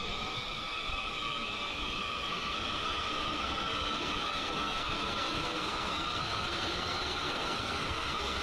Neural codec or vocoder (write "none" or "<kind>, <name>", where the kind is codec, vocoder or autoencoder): codec, SNAC